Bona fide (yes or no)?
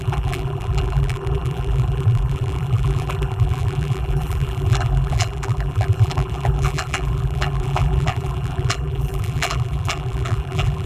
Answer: no